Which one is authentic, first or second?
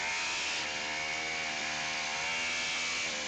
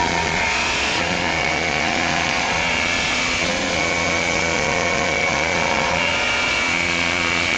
first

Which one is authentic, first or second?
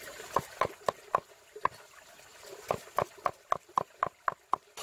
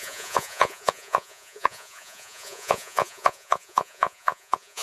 first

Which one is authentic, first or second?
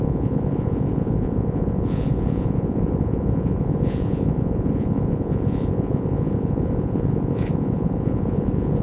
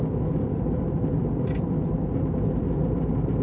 second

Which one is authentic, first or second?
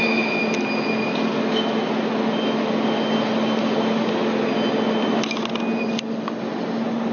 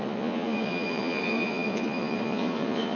first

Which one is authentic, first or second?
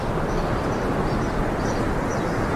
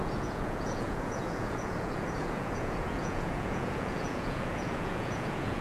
first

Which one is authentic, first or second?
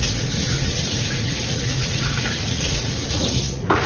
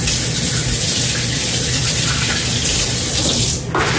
second